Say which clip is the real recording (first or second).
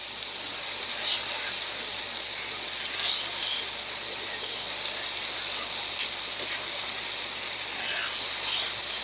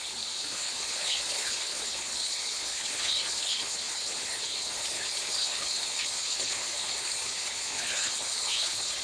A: first